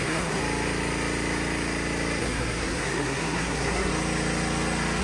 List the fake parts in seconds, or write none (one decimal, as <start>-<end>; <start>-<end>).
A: 0.0-0.4; 2.2-3.9